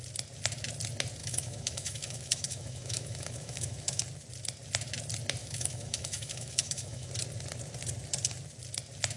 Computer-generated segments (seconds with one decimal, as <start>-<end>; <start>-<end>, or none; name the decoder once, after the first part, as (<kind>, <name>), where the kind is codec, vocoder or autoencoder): 1.2-4.0 (autoencoder, DAC-VAE); 5.4-7.1